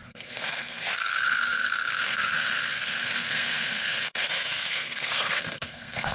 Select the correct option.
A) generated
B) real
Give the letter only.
A